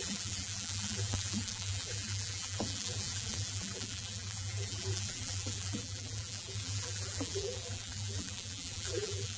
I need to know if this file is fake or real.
fake